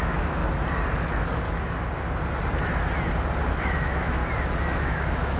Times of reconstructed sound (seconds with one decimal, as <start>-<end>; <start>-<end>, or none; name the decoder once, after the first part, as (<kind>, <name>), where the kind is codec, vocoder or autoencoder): 0.0-0.4 (autoencoder, DAC-VAE); 3.6-4.2; 4.8-5.4